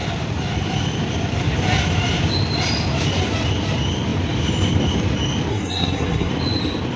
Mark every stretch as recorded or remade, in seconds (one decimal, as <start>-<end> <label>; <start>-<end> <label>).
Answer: 0.0-5.5 recorded; 5.5-6.3 remade; 6.3-7.0 recorded